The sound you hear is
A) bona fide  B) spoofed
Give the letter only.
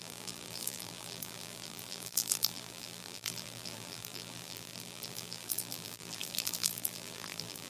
B